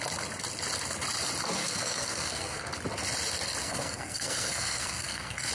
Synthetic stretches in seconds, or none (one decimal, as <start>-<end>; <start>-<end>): 1.6-2.7; 3.6-5.5